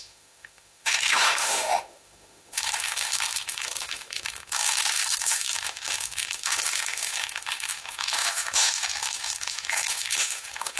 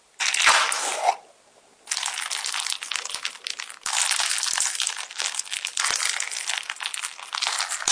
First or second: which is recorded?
second